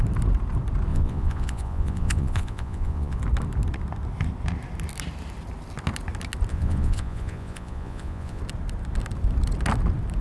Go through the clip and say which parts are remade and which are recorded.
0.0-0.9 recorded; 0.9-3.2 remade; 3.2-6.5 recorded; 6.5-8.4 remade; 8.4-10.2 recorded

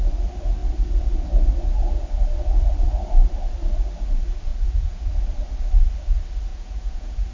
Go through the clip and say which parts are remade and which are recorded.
0.0-4.5 recorded; 4.5-5.1 remade; 5.1-6.5 recorded; 6.5-7.3 remade

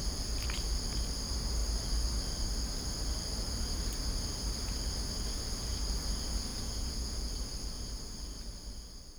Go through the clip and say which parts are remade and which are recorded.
0.0-6.5 recorded; 6.5-7.3 remade; 7.3-9.2 recorded

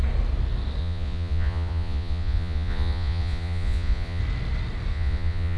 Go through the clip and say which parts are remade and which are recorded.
0.0-0.8 recorded; 0.8-4.2 remade; 4.2-4.9 recorded; 4.9-5.6 remade

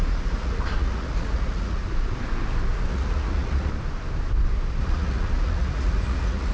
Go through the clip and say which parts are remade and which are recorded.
0.0-1.8 remade; 1.8-2.9 recorded; 2.9-3.7 remade; 3.7-4.8 recorded; 4.8-6.5 remade

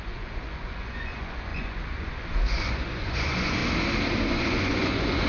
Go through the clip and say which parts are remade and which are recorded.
0.0-3.6 remade; 3.6-4.3 recorded; 4.3-5.3 remade